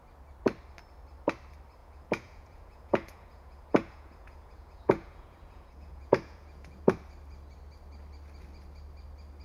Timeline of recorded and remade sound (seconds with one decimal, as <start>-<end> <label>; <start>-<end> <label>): 0.0-1.8 recorded; 1.8-6.8 remade; 6.8-9.4 recorded